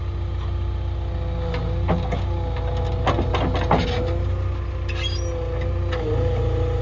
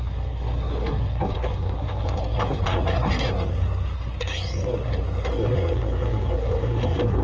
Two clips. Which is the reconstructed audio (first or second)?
second